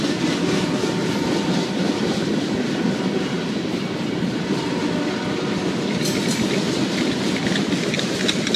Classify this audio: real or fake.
real